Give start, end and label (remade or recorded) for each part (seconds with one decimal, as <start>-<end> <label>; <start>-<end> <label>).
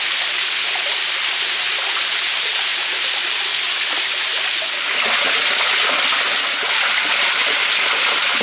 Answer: 0.0-8.4 recorded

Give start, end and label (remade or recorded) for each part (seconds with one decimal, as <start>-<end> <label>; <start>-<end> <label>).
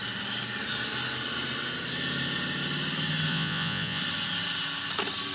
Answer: 0.0-3.3 recorded; 3.3-4.0 remade; 4.0-5.3 recorded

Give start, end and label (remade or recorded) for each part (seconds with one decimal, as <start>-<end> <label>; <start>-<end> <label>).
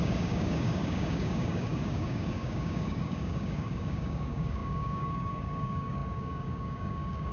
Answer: 0.0-7.3 remade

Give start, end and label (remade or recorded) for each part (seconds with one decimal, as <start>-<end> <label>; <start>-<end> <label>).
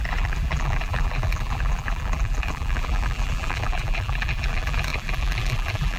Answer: 0.0-6.0 remade